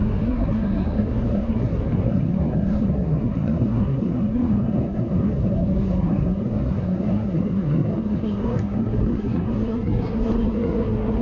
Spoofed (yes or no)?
yes